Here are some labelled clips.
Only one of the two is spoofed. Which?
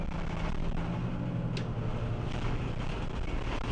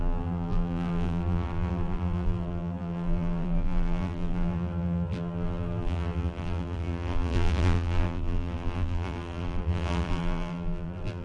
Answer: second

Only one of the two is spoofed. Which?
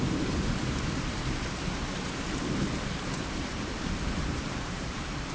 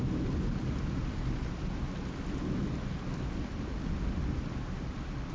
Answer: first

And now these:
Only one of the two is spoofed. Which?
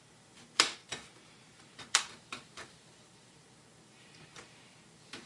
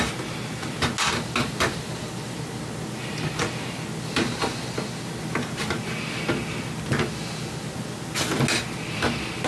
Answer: first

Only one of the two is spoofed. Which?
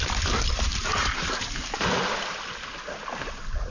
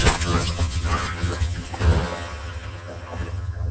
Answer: second